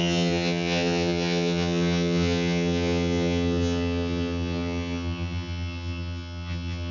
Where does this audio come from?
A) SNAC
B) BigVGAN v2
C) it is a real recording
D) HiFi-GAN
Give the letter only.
D